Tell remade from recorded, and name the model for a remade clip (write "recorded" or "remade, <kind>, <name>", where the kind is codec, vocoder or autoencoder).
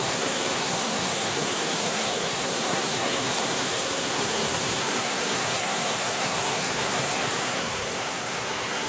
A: remade, codec, SNAC